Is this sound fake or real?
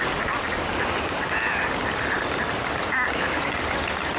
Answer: real